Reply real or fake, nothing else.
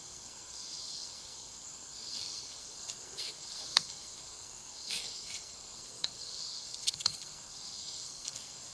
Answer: fake